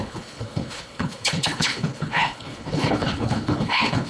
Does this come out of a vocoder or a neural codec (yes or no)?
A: yes